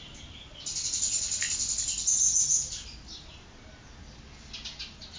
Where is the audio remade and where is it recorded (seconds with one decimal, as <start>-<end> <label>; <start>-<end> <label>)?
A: 0.0-5.2 recorded